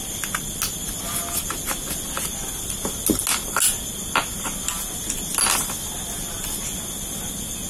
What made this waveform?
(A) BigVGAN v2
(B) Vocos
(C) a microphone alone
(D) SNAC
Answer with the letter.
C